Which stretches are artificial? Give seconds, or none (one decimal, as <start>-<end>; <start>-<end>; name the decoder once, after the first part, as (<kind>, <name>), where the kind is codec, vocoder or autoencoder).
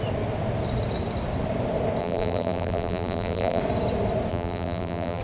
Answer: 2.0-3.6 (vocoder, BigVGAN v2); 4.3-5.2